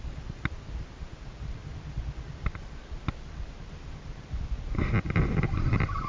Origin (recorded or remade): recorded